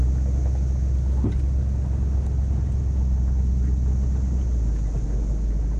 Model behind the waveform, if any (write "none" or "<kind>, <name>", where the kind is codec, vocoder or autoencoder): none